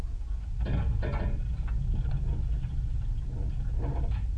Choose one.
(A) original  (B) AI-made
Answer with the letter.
A